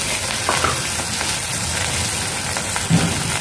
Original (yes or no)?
yes